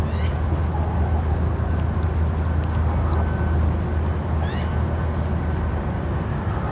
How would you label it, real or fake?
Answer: real